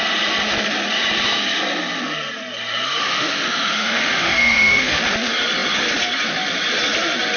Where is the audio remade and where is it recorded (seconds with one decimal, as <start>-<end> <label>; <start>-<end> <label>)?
0.0-3.0 recorded; 3.0-5.0 remade; 5.0-7.4 recorded

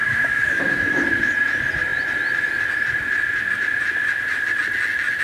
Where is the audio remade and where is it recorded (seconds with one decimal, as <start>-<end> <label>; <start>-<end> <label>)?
0.0-1.3 remade; 1.3-5.2 recorded

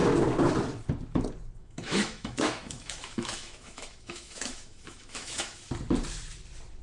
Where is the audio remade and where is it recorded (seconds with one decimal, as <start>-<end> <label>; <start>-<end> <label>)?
0.0-1.6 recorded; 1.6-5.7 remade; 5.7-6.8 recorded

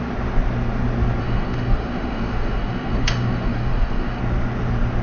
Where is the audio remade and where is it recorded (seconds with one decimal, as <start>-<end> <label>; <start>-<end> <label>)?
0.0-1.2 recorded; 1.2-4.2 remade; 4.2-5.0 recorded